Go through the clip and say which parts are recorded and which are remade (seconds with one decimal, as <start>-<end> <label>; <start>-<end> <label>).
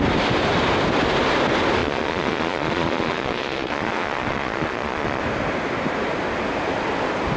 0.0-1.8 recorded; 1.8-5.2 remade; 5.2-7.4 recorded